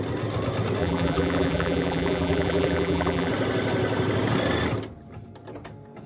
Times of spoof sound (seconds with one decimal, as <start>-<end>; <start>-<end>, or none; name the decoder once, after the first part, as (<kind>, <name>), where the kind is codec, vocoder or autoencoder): 0.8-3.3 (vocoder, BigVGAN v2)